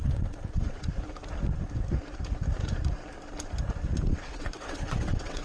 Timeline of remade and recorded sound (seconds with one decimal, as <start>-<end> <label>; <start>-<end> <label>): 0.0-0.9 remade; 0.9-4.1 recorded; 4.1-5.4 remade